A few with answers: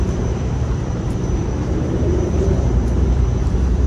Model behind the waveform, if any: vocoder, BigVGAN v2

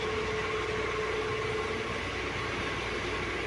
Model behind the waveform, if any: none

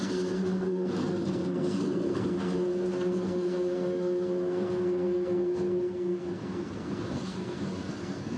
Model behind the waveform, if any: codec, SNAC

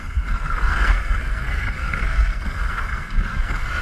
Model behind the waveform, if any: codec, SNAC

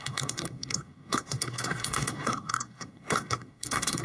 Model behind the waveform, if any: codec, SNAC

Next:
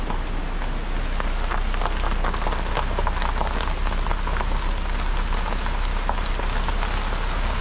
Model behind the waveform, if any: none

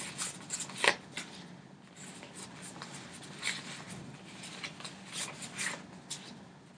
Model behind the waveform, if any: none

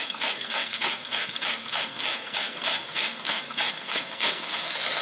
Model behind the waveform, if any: codec, SNAC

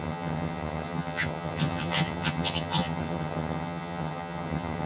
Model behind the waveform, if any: vocoder, HiFi-GAN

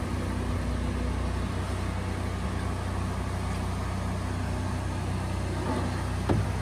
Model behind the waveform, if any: none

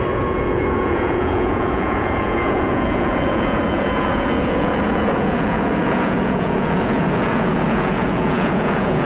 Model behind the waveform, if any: vocoder, Vocos